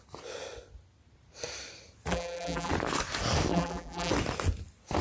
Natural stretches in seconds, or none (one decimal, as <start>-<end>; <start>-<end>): 0.0-2.1; 2.7-3.5; 4.1-5.0